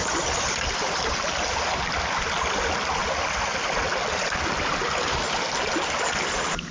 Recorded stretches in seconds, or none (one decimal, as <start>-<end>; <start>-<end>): 0.0-6.7